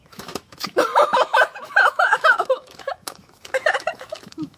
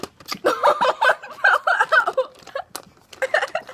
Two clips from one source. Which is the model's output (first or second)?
first